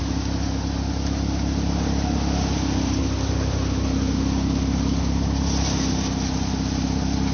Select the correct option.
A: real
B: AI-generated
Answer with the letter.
A